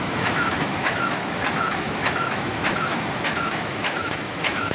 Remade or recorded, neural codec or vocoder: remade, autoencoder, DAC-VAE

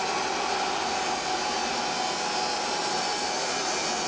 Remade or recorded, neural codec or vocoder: recorded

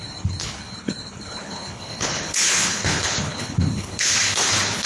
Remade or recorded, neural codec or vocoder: remade, codec, HILCodec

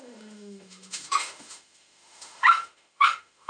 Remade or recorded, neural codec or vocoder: remade, autoencoder, DAC-VAE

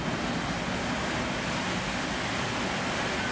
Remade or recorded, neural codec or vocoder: recorded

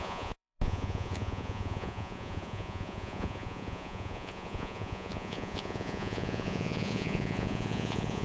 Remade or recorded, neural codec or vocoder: remade, vocoder, Vocos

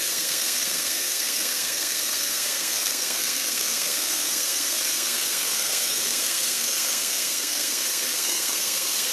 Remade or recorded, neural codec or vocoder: remade, codec, SNAC